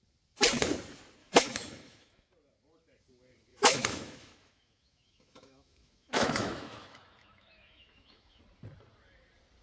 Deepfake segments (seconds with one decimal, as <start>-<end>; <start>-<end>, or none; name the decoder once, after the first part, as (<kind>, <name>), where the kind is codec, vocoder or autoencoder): 1.2-2.3 (autoencoder, DAC-VAE); 3.5-8.4